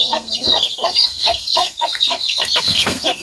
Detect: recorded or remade remade